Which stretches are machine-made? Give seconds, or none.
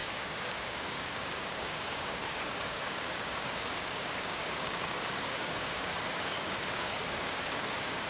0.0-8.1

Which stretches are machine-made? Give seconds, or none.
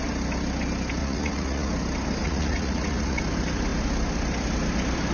1.0-1.7; 2.2-3.2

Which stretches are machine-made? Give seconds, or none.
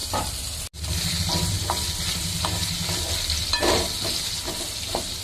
none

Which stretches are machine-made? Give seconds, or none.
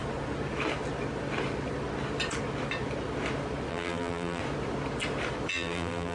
3.7-4.4; 5.5-6.1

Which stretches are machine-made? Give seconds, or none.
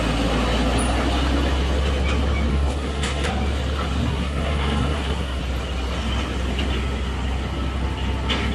2.5-3.3; 4.1-5.4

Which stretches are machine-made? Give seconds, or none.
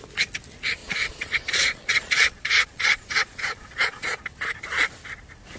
0.8-4.2